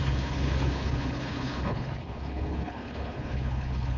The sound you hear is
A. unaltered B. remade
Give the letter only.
B